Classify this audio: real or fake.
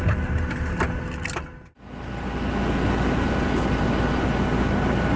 real